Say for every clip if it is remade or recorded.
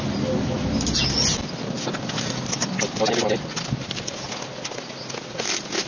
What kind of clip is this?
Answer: recorded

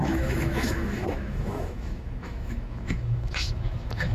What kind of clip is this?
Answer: remade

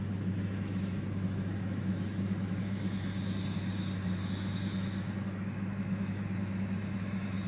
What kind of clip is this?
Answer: remade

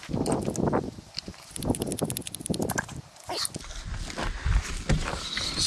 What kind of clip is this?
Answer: recorded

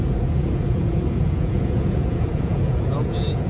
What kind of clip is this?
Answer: remade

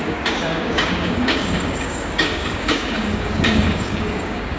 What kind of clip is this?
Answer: remade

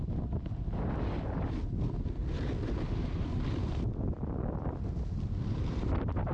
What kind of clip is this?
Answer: recorded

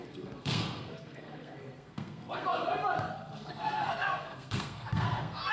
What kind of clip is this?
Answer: remade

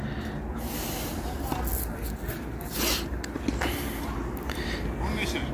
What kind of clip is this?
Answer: recorded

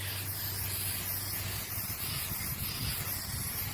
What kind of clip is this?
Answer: recorded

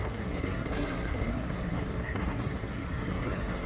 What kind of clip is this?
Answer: remade